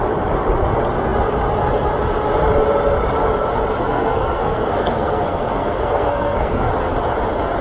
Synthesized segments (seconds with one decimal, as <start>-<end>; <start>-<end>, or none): 3.8-6.7

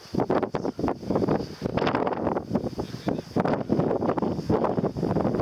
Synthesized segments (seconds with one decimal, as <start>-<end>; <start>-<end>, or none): none

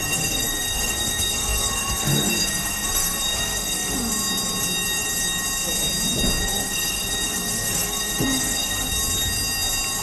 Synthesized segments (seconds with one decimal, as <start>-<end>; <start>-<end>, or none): 0.0-4.1; 6.4-8.9

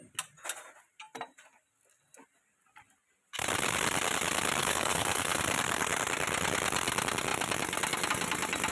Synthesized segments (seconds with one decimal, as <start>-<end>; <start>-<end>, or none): 4.6-5.4

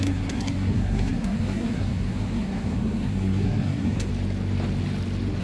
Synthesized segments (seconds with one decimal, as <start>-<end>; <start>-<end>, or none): 0.0-4.1

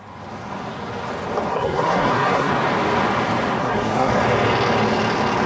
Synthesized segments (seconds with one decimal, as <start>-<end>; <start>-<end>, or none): 1.5-2.5; 3.6-4.1

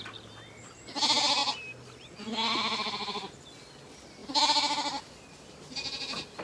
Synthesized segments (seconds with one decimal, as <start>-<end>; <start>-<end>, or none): none

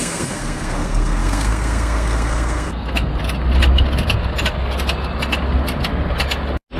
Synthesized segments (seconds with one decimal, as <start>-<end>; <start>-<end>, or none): 0.0-3.1